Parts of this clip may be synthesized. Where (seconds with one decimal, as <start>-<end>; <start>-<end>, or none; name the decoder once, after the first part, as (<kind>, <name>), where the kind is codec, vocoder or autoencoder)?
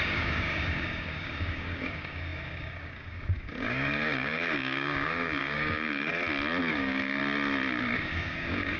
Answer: 0.0-6.1 (codec, DAC); 6.7-7.2; 7.8-8.8